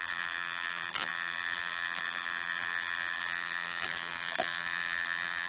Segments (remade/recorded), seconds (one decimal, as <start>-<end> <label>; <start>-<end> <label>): 0.0-5.5 remade